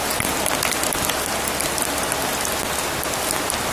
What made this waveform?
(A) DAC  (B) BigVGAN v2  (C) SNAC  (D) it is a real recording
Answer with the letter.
D